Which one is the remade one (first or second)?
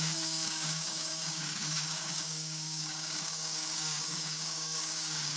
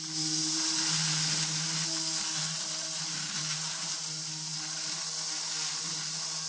first